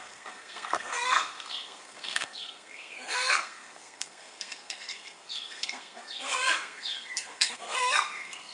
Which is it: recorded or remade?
remade